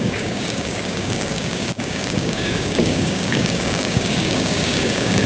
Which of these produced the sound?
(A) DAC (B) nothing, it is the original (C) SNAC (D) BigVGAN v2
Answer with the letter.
A